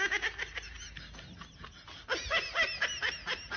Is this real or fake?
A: real